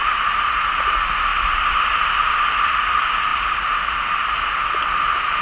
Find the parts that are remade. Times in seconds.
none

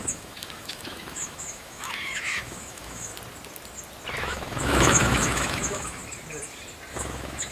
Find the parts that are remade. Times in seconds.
0.0-3.1 (autoencoder, DAC-VAE); 4.2-6.0; 6.9-7.5

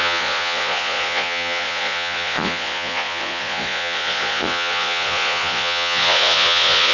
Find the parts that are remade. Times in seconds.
0.0-6.9 (vocoder, Vocos)